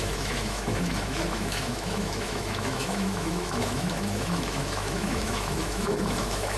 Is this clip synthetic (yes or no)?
yes